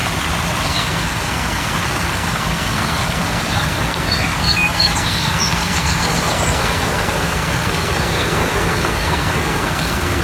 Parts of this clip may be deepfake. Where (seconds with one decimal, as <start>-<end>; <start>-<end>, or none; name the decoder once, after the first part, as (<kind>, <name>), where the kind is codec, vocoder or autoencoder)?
0.6-10.2 (codec, SNAC)